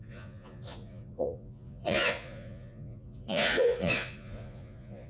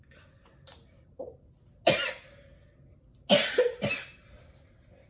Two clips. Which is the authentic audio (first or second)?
second